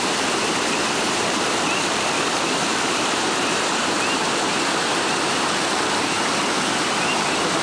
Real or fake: real